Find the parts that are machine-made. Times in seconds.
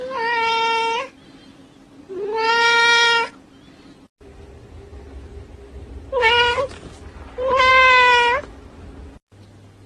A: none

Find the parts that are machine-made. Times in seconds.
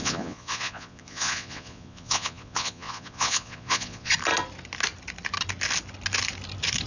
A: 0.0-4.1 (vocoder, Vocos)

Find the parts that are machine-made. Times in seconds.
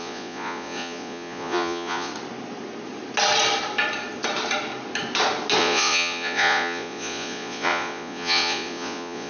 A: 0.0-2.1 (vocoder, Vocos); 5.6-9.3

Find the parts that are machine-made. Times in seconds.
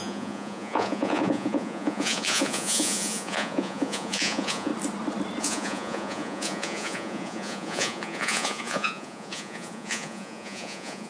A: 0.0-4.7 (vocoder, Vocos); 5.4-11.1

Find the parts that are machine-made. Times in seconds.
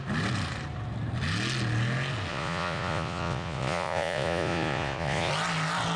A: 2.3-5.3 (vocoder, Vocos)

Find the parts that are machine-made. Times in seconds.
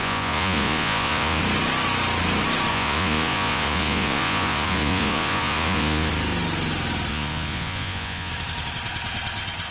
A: 0.0-1.4 (vocoder, Vocos); 2.7-6.1; 7.1-8.3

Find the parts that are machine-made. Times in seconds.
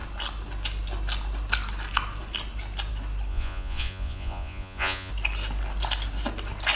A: 3.3-5.1 (vocoder, Vocos)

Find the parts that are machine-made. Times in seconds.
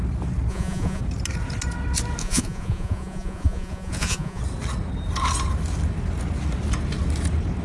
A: 0.5-1.0 (vocoder, Vocos); 2.2-4.4